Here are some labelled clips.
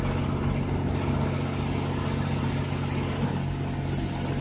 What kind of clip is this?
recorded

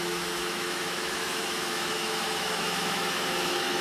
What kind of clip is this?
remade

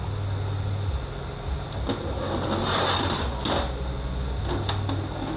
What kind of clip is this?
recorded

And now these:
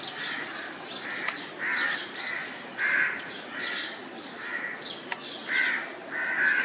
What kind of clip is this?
recorded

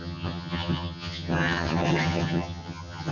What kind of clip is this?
remade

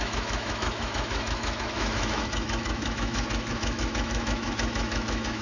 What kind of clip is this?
remade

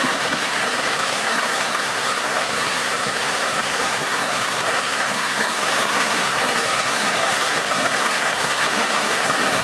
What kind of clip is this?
remade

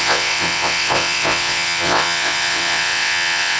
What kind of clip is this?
remade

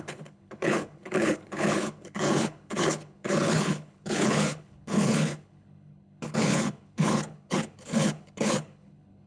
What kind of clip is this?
remade